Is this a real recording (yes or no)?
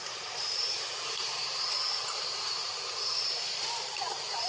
no